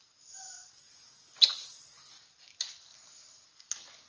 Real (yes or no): yes